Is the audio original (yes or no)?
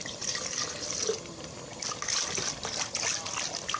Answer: yes